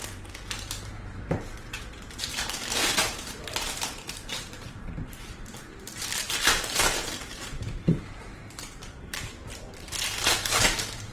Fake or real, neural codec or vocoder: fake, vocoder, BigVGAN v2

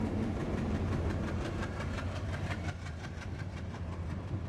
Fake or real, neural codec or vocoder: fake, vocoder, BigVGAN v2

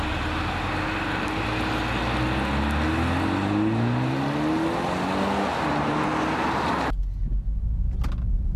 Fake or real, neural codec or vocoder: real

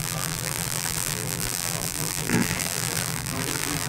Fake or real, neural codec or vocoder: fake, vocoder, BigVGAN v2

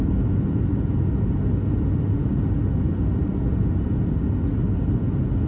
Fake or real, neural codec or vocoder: real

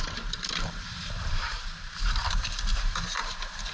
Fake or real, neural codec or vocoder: fake, vocoder, BigVGAN v2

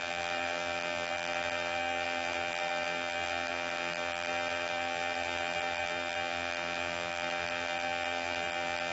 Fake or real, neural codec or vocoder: fake, vocoder, BigVGAN v2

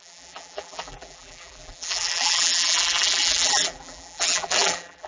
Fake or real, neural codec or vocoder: fake, vocoder, BigVGAN v2